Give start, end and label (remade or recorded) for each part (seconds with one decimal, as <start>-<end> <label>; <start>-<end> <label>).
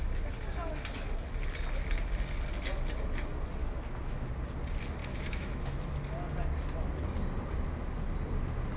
0.0-3.6 recorded; 3.6-4.3 remade; 4.3-5.0 recorded; 5.0-5.8 remade; 5.8-8.8 recorded